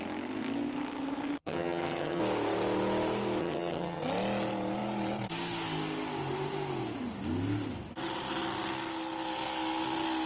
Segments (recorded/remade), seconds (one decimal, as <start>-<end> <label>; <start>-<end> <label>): 0.0-1.4 recorded; 1.4-2.2 remade; 2.2-3.4 recorded; 3.4-4.0 remade; 4.0-10.3 recorded